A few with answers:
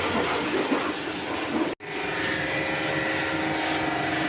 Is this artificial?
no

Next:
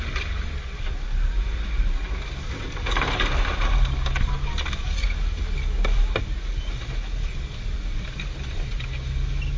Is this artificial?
no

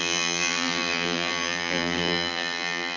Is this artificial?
yes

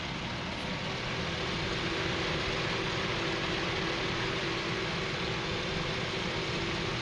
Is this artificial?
no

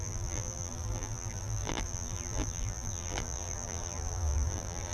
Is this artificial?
yes